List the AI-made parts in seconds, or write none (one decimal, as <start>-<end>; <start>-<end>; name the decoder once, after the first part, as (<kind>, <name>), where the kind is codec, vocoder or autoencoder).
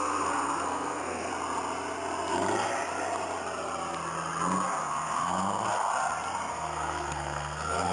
0.0-1.3 (codec, SNAC); 4.8-5.9; 6.5-7.9